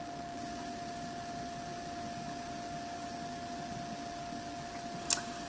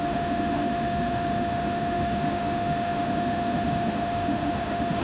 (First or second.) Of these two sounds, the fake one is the second